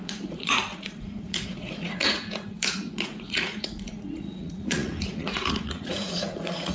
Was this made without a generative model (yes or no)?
no